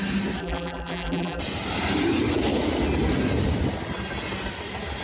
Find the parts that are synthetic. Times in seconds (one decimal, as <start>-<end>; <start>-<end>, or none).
0.4-1.4